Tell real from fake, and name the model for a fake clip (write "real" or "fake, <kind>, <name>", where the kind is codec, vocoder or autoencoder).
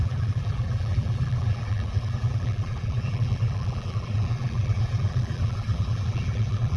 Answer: fake, vocoder, BigVGAN v2